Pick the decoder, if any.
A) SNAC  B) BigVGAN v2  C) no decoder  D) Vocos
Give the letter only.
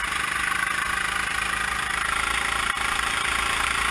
C